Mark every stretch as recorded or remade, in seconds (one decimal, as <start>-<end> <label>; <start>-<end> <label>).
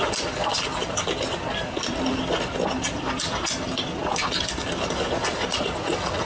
0.0-6.3 recorded